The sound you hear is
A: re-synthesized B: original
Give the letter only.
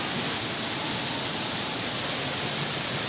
B